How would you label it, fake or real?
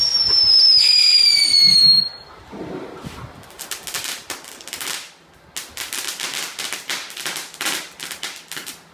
real